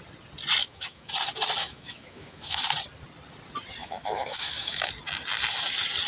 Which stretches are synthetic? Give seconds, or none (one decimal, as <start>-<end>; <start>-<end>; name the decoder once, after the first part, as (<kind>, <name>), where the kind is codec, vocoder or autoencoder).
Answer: 0.6-1.1 (autoencoder, DAC-VAE); 1.6-2.6; 3.8-4.9